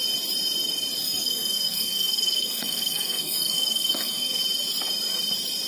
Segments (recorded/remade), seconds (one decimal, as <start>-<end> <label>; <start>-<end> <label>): 0.0-1.0 recorded; 1.0-4.4 remade; 4.4-5.7 recorded